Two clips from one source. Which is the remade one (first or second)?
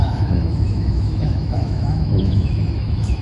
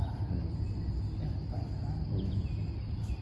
first